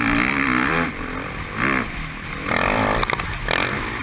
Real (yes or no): no